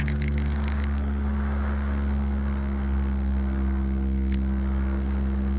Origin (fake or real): fake